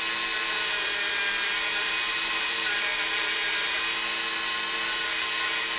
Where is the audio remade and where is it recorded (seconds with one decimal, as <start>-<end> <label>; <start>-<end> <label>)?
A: 0.0-0.4 recorded; 0.4-3.9 remade; 3.9-5.8 recorded